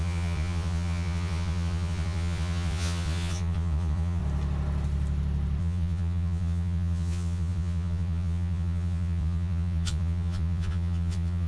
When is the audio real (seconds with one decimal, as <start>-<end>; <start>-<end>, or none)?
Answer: 4.2-5.6